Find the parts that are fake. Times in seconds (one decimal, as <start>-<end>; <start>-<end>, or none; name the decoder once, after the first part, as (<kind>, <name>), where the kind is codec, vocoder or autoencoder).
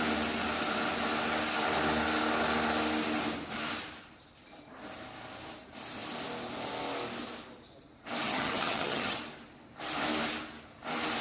8.2-9.2 (vocoder, HiFi-GAN)